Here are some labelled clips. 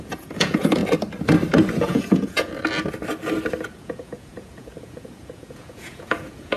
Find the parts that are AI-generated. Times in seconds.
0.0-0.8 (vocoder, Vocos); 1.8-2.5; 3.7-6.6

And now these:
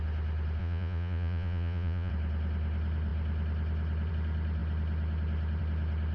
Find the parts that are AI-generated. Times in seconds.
0.6-2.1 (vocoder, Vocos)

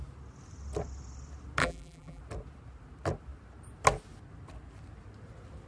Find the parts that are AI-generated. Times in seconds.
1.6-2.2 (vocoder, BigVGAN v2)

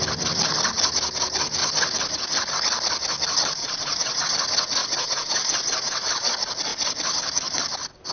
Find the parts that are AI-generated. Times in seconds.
3.6-4.2 (vocoder, Vocos); 4.8-6.3

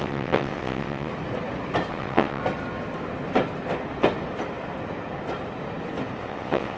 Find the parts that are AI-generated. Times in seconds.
0.0-1.1 (vocoder, WaveNeXt); 1.9-2.4; 6.2-6.8

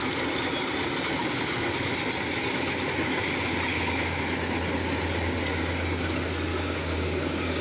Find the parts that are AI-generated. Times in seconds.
1.2-1.9 (codec, DAC); 3.7-4.2; 6.5-7.6

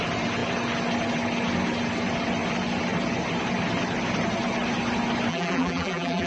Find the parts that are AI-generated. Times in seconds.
5.3-6.3 (vocoder, BigVGAN v2)